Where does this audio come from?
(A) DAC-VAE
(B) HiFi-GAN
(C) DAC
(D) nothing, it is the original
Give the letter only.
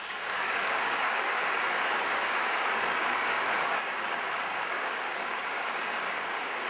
C